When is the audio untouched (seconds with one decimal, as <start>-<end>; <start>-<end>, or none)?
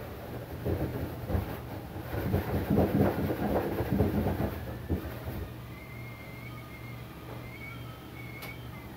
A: 6.2-8.4